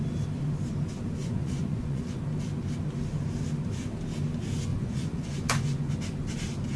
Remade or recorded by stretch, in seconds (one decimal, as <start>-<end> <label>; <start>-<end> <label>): 0.0-1.2 recorded; 1.2-2.2 remade; 2.2-4.7 recorded; 4.7-5.9 remade; 5.9-6.8 recorded